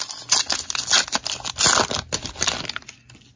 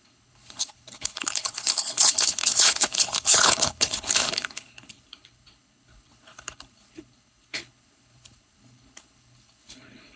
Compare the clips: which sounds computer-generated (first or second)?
second